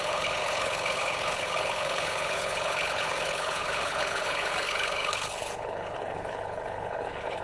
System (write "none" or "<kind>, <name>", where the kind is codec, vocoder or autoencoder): codec, HILCodec